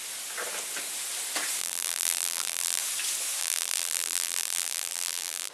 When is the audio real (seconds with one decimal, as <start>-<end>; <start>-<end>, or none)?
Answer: 0.0-1.6; 2.8-3.4